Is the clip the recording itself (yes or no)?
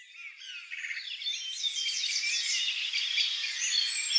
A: yes